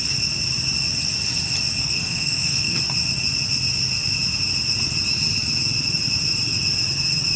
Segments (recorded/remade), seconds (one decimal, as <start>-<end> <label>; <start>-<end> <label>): 0.0-1.8 recorded; 1.8-2.8 remade; 2.8-7.4 recorded